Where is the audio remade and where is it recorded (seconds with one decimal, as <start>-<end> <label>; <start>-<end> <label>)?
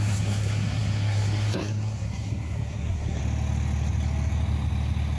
0.0-3.2 remade; 3.2-5.2 recorded